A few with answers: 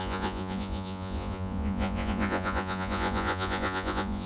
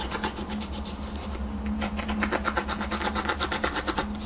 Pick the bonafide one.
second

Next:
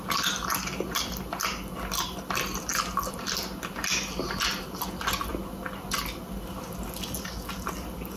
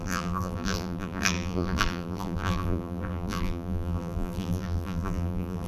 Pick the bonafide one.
first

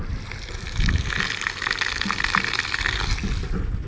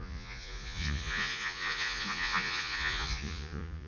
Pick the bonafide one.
first